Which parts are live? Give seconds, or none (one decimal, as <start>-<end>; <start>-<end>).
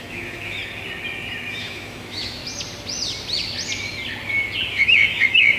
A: 0.6-1.5; 2.4-4.7